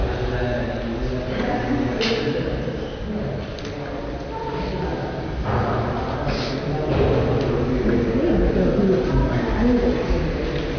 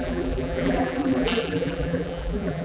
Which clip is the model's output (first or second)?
second